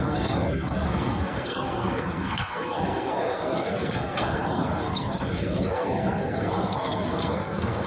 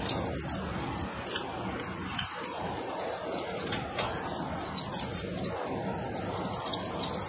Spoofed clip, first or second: first